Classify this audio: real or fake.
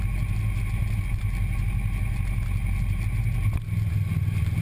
real